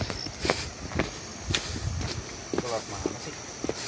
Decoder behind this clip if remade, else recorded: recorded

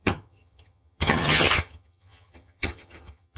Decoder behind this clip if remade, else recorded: remade, vocoder, HiFi-GAN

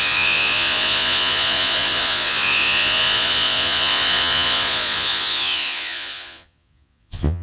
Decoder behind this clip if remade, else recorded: remade, vocoder, Vocos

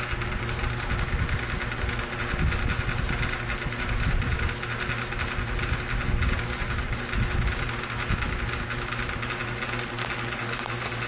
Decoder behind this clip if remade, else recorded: recorded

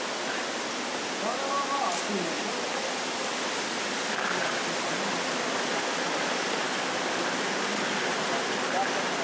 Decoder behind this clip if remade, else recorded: recorded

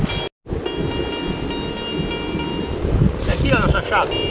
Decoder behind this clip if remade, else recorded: recorded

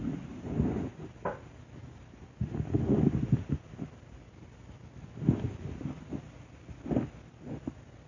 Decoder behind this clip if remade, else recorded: recorded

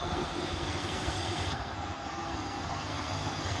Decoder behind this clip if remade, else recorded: remade, codec, SNAC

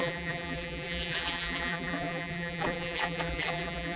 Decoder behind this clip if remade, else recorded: remade, vocoder, BigVGAN v2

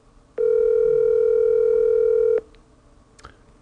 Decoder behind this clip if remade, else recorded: recorded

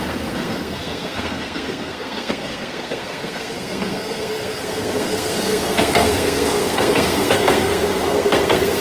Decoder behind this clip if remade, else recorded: remade, codec, SNAC